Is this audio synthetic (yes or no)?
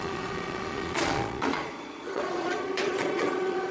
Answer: yes